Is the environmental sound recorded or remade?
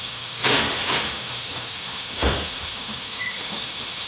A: remade